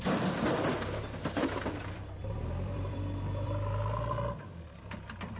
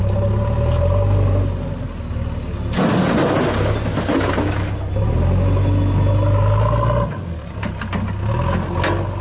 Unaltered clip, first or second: second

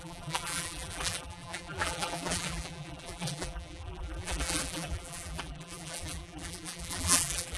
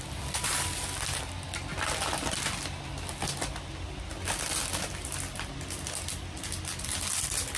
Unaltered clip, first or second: second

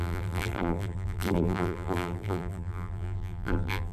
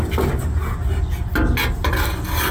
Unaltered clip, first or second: second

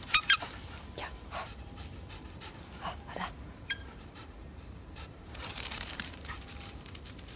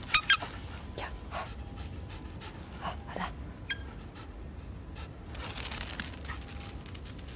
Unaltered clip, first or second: second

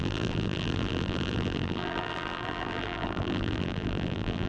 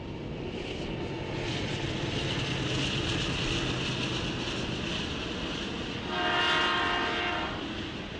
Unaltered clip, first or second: second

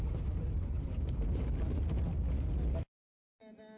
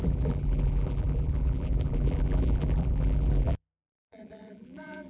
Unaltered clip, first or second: first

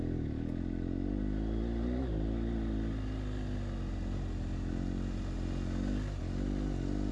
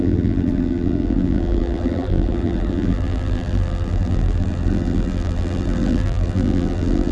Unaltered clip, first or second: first